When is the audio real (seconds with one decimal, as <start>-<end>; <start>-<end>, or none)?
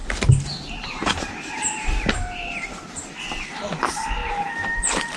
3.1-4.2